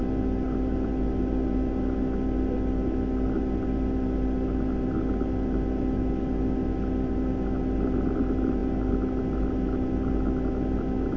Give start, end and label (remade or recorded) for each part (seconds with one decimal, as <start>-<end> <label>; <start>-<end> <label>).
0.0-11.2 recorded